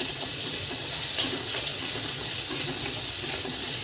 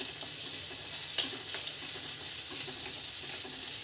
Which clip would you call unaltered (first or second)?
second